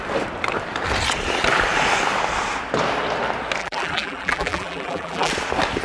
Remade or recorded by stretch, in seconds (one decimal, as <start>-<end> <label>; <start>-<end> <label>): 0.0-3.6 recorded; 3.6-5.3 remade; 5.3-5.8 recorded